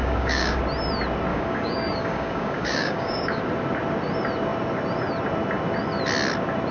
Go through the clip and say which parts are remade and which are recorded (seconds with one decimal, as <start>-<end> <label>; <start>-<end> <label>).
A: 0.0-0.6 remade; 0.6-1.3 recorded; 1.3-3.4 remade; 3.4-6.7 recorded